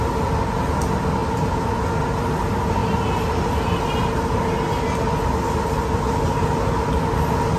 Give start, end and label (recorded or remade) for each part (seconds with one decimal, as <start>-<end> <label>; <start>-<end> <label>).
0.0-7.6 recorded